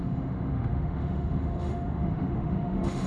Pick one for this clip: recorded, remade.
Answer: remade